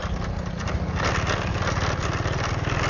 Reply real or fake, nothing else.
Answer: real